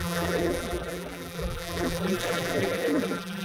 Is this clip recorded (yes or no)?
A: no